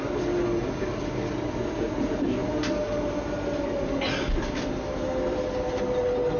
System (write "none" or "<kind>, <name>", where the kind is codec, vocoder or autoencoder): none